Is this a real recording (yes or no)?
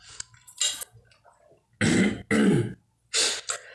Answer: yes